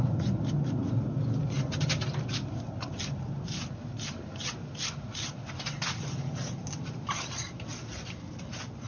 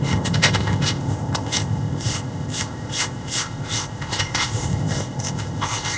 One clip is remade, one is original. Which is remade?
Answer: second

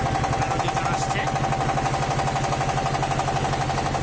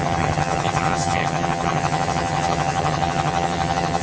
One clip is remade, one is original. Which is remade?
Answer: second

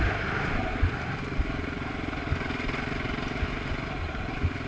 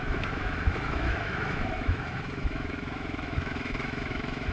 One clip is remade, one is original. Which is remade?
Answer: second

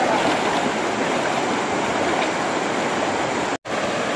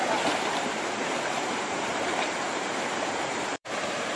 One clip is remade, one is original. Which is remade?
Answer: second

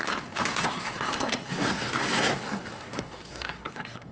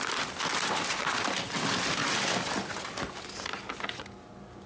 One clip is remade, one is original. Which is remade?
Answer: first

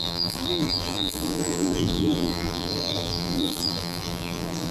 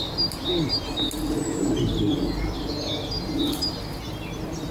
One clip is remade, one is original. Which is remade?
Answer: first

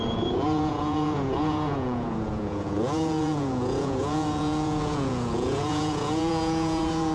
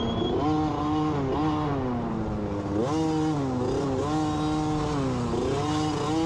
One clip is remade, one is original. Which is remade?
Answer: first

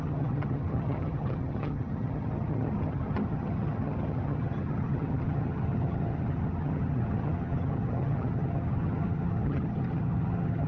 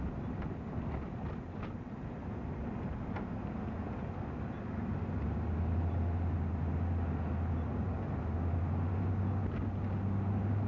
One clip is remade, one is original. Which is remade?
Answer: first